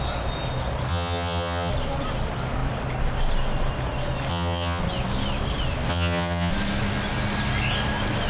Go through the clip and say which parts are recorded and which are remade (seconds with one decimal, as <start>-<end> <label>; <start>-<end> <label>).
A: 0.0-0.9 recorded; 0.9-1.7 remade; 1.7-4.3 recorded; 4.3-4.8 remade; 4.8-5.9 recorded; 5.9-6.5 remade; 6.5-8.3 recorded